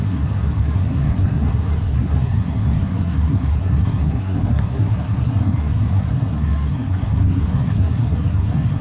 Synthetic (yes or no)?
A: yes